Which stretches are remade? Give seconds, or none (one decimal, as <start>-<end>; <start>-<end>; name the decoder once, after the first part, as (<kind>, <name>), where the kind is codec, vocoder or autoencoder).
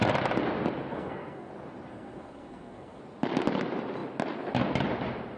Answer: 0.9-1.5 (codec, SNAC); 1.9-3.0